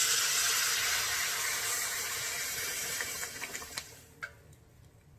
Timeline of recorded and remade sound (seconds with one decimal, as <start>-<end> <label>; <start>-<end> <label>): 0.0-1.7 recorded; 1.7-4.2 remade; 4.2-5.2 recorded

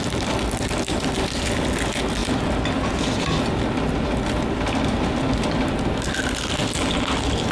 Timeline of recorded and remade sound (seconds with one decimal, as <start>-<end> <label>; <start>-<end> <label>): 0.0-7.5 recorded